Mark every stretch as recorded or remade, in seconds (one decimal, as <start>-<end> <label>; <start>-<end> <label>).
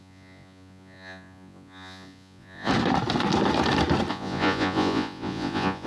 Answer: 0.0-2.7 remade; 2.7-4.1 recorded; 4.1-5.9 remade